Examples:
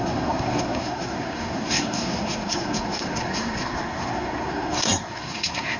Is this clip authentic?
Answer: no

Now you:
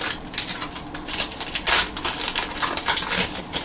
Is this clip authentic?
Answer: yes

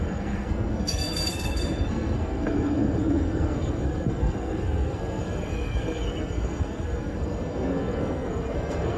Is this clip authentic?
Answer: no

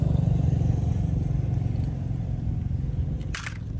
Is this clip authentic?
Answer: yes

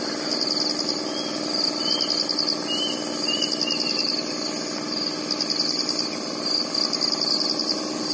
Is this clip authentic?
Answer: yes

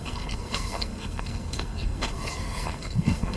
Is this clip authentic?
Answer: no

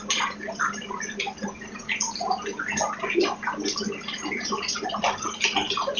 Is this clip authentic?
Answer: yes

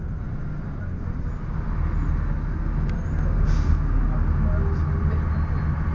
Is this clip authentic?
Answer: yes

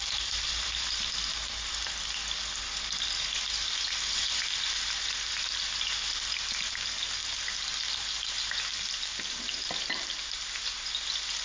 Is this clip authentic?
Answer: yes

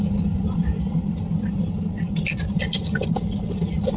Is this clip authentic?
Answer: yes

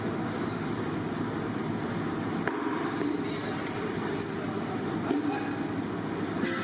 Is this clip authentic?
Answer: yes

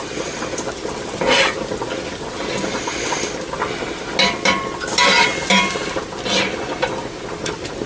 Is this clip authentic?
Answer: yes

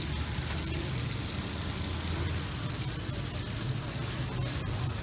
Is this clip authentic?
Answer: yes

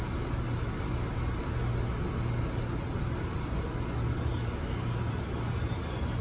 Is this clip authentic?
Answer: yes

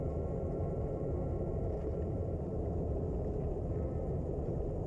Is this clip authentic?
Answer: no